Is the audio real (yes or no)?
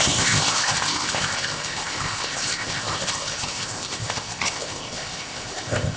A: no